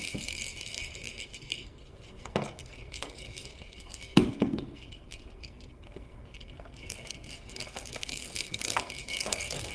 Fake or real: fake